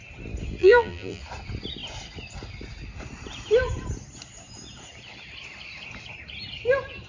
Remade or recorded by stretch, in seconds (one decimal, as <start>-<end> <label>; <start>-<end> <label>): 0.0-0.6 recorded; 0.6-1.2 remade; 1.2-7.1 recorded

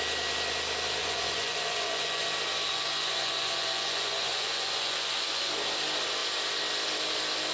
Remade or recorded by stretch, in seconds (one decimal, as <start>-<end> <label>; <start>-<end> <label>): 0.0-1.0 recorded; 1.0-2.2 remade; 2.2-2.7 recorded; 2.7-5.5 remade; 5.5-7.5 recorded

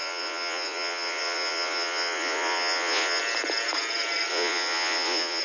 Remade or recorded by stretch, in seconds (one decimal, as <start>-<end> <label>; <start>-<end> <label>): 0.0-3.2 remade; 3.2-4.3 recorded; 4.3-5.4 remade

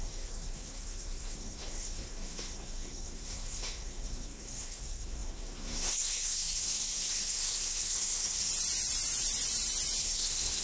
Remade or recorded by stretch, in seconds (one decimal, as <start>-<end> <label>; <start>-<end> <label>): 0.0-8.5 remade; 8.5-10.0 recorded; 10.0-10.6 remade

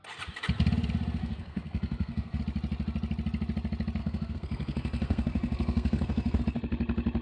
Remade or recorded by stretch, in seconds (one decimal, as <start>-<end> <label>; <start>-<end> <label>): 0.0-1.2 recorded; 1.2-2.4 remade; 2.4-4.0 recorded; 4.0-6.4 remade; 6.4-7.2 recorded

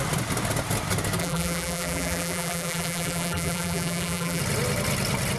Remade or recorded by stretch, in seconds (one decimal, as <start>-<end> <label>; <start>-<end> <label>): 0.0-1.2 recorded; 1.2-4.4 remade; 4.4-5.4 recorded

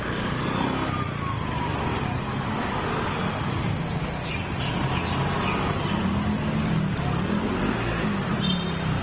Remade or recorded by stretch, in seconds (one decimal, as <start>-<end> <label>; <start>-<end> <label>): 0.0-6.6 recorded; 6.6-7.6 remade; 7.6-9.0 recorded

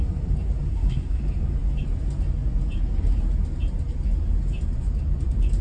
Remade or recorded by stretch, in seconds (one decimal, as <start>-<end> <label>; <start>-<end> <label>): 0.0-0.7 recorded; 0.7-1.2 remade; 1.2-5.6 recorded